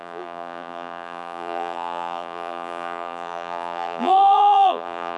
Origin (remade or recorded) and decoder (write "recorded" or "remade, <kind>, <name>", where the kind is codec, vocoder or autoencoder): remade, vocoder, BigVGAN v2